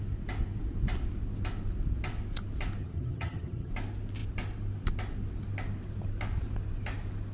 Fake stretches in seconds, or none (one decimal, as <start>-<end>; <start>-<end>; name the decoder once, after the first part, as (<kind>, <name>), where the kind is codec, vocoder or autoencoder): 2.8-3.7 (vocoder, HiFi-GAN)